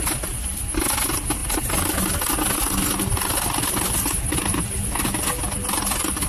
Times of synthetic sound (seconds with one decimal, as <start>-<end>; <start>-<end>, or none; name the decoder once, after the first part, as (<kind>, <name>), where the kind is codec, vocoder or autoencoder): none

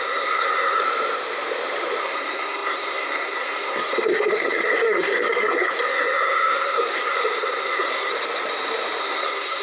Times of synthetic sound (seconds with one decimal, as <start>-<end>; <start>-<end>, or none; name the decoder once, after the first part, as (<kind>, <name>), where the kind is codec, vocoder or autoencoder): 0.0-0.8 (codec, SNAC); 2.0-8.1; 9.0-9.6

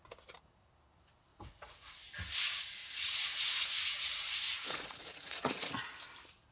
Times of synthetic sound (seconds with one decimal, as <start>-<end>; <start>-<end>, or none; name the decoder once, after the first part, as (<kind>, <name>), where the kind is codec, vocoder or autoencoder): 1.3-1.9 (vocoder, Vocos); 2.8-5.8